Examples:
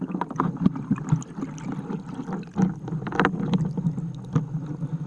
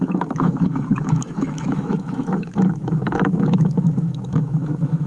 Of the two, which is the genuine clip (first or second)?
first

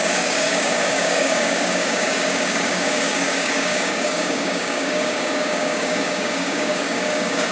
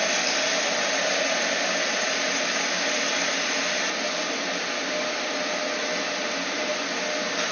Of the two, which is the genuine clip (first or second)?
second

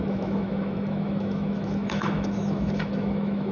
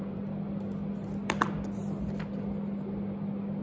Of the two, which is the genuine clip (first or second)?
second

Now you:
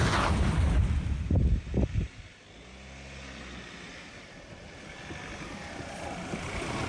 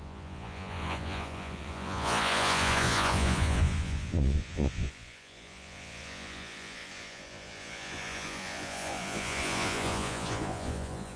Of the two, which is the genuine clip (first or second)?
first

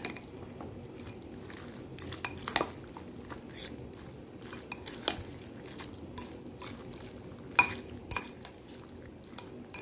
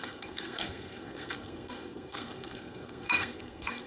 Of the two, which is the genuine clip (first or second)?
first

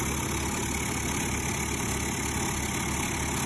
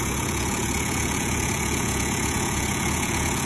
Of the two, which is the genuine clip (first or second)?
first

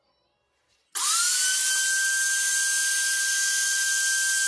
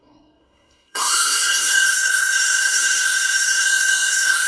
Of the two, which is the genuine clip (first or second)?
first